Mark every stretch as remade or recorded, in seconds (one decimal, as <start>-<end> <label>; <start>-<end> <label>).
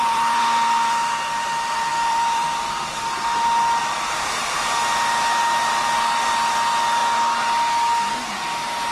0.0-5.4 remade; 5.4-6.2 recorded; 6.2-7.0 remade; 7.0-8.1 recorded; 8.1-8.9 remade